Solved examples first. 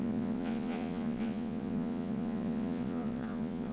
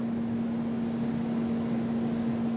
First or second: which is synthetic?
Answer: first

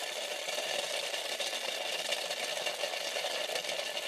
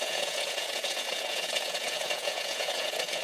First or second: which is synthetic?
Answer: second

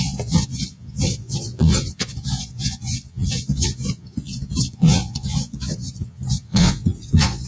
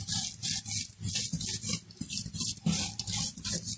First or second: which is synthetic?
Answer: first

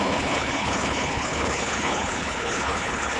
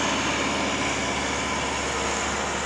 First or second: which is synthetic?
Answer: first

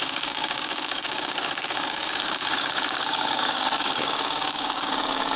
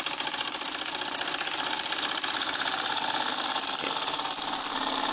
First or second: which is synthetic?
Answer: first